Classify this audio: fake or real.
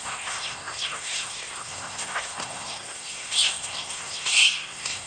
fake